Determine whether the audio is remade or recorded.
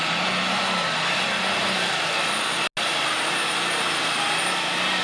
recorded